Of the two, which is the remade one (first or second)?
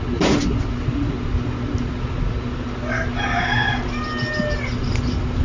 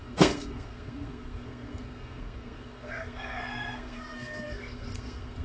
second